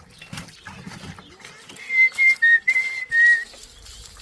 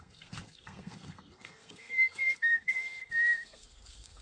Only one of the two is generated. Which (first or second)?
second